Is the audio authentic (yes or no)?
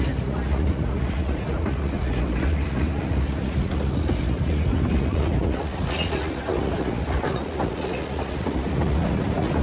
no